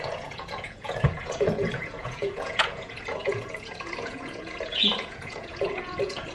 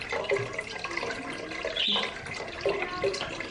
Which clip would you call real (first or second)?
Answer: second